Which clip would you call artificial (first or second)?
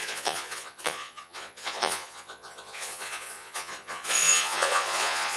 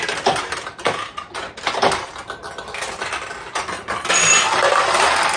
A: first